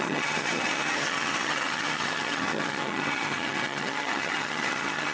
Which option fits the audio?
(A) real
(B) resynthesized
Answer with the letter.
B